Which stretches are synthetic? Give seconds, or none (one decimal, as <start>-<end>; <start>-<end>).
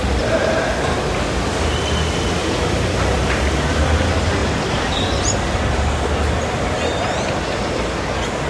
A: none